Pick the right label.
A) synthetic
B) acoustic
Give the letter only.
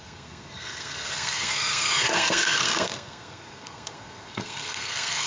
A